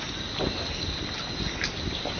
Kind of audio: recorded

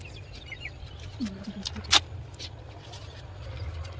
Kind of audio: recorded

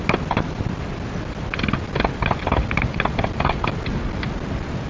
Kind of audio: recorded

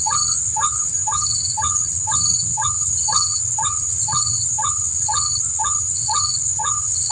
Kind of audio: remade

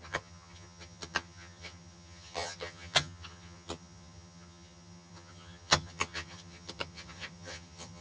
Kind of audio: remade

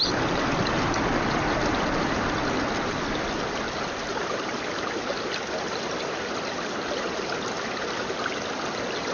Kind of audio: recorded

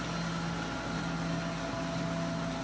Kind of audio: recorded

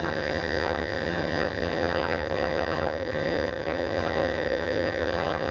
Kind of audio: remade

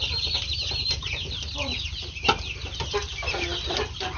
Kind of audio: recorded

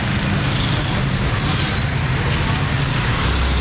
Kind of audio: recorded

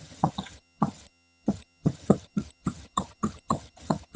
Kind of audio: remade